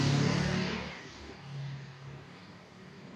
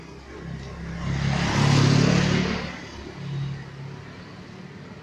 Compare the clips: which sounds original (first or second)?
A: second